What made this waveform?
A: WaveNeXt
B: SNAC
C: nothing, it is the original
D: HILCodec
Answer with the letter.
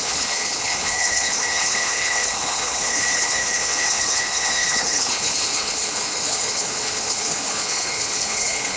D